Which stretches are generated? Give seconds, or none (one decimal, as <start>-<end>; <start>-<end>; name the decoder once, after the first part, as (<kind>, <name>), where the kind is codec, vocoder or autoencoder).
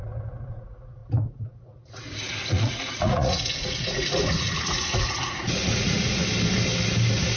0.0-6.2 (vocoder, Vocos)